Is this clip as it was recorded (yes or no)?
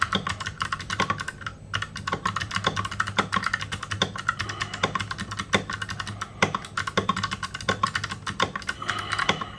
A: yes